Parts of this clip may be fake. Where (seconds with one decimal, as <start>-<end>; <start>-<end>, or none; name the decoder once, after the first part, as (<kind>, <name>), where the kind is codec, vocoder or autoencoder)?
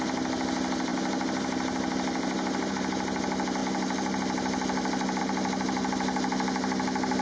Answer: none